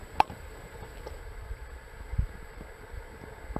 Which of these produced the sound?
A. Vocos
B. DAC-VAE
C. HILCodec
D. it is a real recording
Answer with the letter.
D